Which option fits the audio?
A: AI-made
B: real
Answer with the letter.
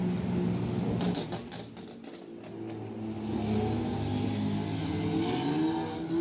B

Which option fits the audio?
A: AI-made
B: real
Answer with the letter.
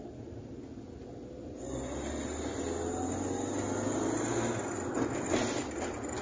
B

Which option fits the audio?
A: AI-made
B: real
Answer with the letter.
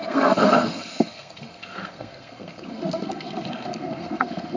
A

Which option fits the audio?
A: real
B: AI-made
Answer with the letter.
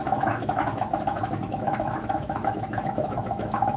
B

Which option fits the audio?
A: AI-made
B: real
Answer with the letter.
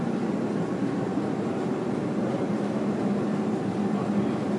B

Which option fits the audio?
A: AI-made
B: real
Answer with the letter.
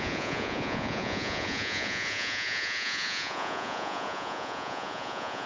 A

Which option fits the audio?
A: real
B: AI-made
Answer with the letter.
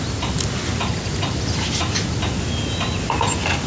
A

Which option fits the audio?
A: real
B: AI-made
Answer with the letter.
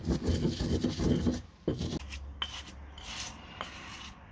A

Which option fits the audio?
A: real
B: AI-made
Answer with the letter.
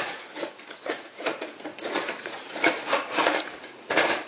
B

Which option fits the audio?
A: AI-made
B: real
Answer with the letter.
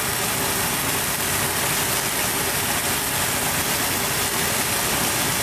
B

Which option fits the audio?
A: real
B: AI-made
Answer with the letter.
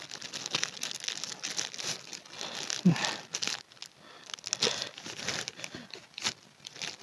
A